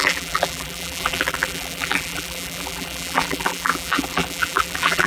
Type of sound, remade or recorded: remade